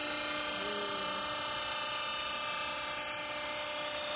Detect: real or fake real